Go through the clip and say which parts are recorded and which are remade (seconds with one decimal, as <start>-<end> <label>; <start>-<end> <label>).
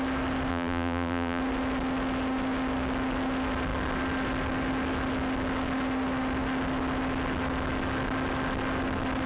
0.0-0.5 recorded; 0.5-1.4 remade; 1.4-9.3 recorded